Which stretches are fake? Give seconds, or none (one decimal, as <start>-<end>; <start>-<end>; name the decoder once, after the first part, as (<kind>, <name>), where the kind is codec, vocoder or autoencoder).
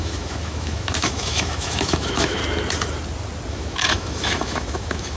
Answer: 0.0-2.4 (autoencoder, DAC-VAE); 3.5-5.2